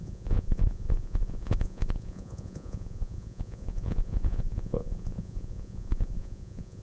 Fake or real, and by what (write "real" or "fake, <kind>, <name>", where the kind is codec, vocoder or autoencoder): fake, vocoder, Vocos